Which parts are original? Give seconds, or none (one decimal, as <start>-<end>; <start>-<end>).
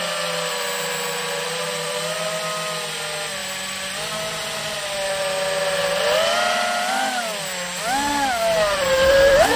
0.0-9.6